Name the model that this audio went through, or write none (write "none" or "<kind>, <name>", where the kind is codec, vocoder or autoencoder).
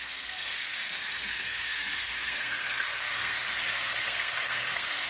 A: codec, SNAC